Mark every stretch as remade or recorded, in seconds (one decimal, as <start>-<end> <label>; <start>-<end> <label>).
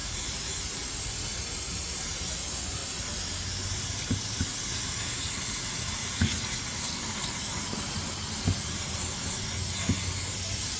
0.0-0.6 remade; 0.6-6.0 recorded; 6.0-6.6 remade; 6.6-10.8 recorded